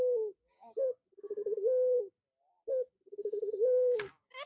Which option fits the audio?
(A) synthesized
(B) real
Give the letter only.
A